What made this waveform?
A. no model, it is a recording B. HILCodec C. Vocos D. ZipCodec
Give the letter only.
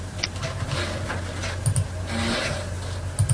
A